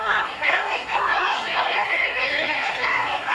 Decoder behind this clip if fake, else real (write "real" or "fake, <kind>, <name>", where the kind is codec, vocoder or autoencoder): fake, codec, SNAC